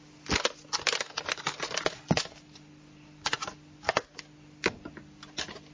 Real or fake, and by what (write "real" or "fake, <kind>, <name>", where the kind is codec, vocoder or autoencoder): real